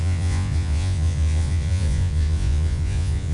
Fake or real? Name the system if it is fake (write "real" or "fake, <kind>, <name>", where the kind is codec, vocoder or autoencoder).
fake, vocoder, Vocos